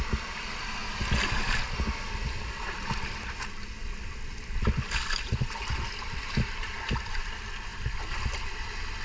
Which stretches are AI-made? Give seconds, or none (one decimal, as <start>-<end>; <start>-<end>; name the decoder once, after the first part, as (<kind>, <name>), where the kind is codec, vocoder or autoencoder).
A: none

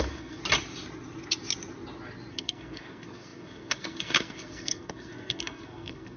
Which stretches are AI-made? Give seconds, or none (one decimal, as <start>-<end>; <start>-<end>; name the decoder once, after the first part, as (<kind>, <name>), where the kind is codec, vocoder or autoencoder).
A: 0.0-0.4 (codec, SNAC); 2.3-6.2

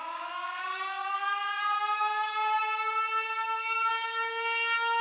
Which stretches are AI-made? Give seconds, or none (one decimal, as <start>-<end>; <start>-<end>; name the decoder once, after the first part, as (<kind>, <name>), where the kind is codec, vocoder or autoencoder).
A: 0.0-5.0 (codec, DAC)